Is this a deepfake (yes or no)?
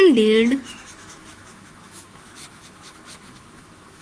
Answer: yes